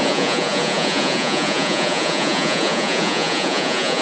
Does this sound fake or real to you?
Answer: fake